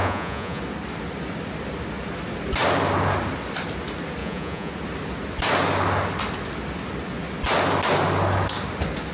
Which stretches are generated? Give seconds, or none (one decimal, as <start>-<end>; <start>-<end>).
0.0-0.6; 4.2-4.7